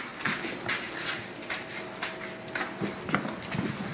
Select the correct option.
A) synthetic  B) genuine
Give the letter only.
B